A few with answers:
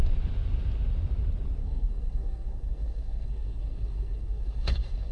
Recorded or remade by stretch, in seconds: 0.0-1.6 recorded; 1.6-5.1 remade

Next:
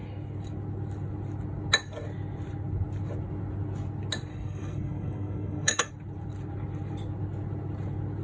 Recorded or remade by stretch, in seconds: 0.0-4.3 recorded; 4.3-5.9 remade; 5.9-8.2 recorded

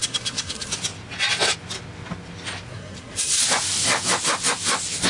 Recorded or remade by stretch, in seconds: 0.0-0.7 remade; 0.7-2.7 recorded; 2.7-3.4 remade; 3.4-5.1 recorded

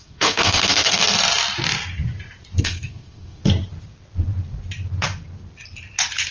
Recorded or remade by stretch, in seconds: 0.0-1.0 remade; 1.0-2.6 recorded; 2.6-3.4 remade; 3.4-6.3 recorded

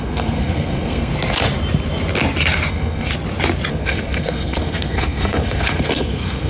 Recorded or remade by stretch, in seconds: 0.0-1.1 remade; 1.1-2.7 recorded; 2.7-3.1 remade; 3.1-3.7 recorded; 3.7-6.5 remade

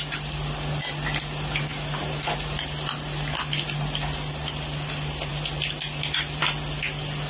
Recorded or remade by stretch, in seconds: 0.0-7.3 recorded

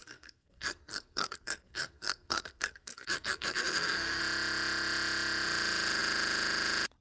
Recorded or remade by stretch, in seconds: 0.0-4.2 remade; 4.2-7.0 recorded

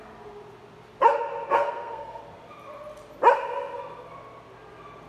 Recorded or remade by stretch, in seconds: 0.0-1.5 recorded; 1.5-2.2 remade; 2.2-5.1 recorded